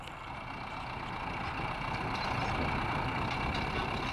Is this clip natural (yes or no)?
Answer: yes